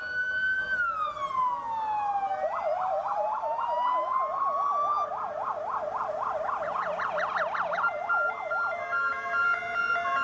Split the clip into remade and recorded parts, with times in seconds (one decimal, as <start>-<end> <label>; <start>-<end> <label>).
0.0-10.2 recorded